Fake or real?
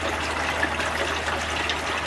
real